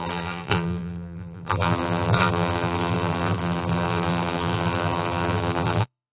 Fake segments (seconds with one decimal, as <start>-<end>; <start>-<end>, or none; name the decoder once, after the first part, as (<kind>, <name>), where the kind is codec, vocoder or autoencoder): 0.0-6.1 (vocoder, BigVGAN v2)